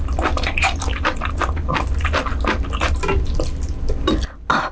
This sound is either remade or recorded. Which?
recorded